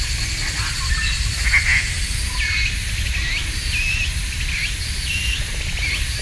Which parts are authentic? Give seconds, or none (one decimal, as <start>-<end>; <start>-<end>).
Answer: 0.0-6.2